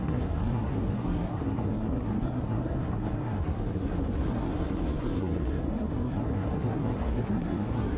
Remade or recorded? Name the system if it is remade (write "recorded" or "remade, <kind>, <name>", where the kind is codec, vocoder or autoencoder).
remade, codec, SNAC